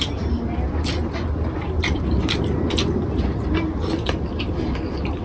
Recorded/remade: recorded